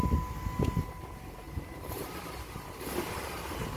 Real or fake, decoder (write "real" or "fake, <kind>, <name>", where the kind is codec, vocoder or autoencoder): real